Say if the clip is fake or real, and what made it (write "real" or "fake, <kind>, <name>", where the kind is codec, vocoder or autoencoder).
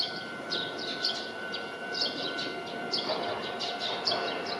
fake, vocoder, BigVGAN v2